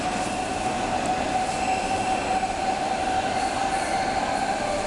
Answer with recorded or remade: recorded